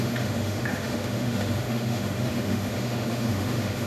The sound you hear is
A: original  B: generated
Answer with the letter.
B